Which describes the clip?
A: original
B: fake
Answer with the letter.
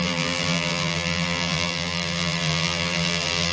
B